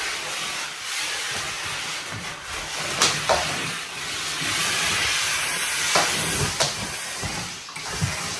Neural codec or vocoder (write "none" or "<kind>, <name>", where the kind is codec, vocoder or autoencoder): vocoder, BigVGAN v2